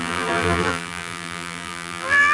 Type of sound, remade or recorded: remade